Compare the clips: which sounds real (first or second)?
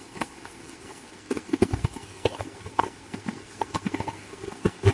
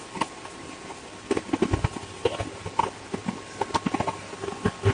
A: second